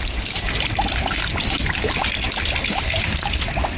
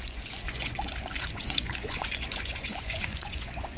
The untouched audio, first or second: first